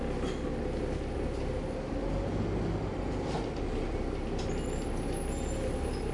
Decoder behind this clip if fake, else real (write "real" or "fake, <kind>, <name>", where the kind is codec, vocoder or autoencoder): real